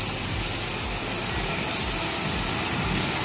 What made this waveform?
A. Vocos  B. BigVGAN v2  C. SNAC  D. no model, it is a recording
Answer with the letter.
D